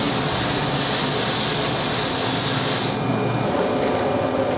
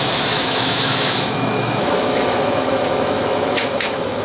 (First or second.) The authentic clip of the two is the first